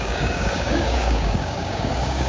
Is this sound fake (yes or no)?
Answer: yes